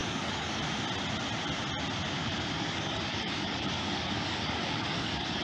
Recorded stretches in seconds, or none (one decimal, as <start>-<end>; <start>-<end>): 0.6-2.2